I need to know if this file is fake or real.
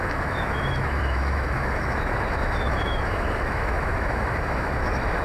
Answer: fake